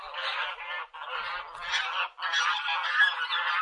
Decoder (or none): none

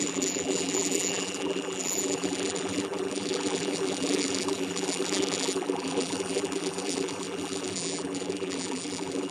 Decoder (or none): vocoder, BigVGAN v2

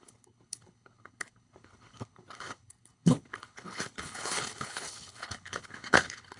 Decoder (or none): codec, HILCodec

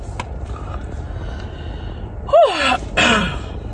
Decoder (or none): none